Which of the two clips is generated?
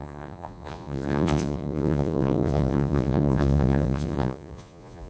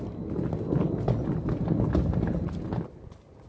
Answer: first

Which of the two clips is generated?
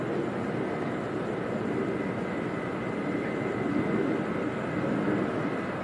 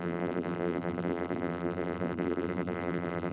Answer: second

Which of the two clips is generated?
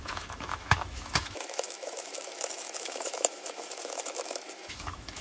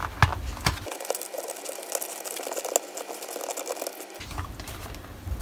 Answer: first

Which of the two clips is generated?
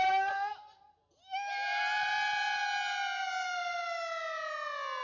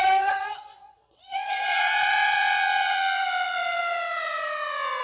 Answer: second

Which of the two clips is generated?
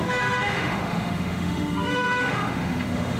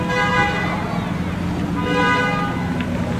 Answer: first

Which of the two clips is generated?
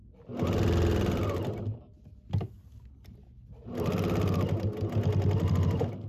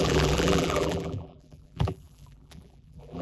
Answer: second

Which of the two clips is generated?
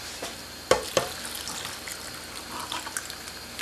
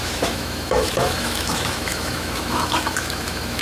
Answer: second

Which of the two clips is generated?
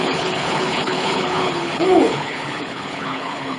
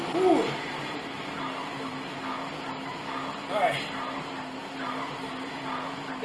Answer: first